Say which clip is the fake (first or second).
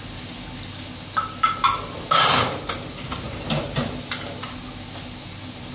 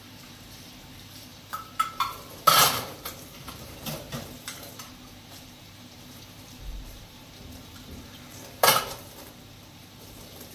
second